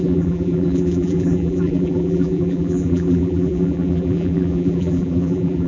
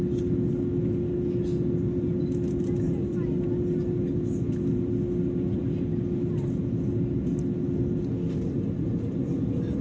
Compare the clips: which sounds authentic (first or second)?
second